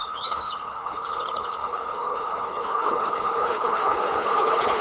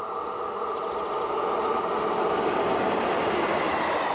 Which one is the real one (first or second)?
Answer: second